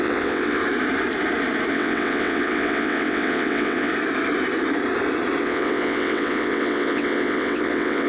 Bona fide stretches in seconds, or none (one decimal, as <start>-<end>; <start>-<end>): 0.6-1.7; 3.9-5.4